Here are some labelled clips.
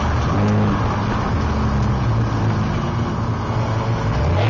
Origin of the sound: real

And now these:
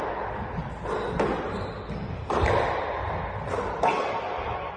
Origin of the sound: real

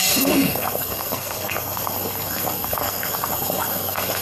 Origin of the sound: fake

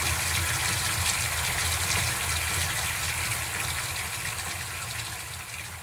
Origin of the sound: real